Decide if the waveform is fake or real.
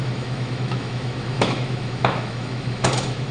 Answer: fake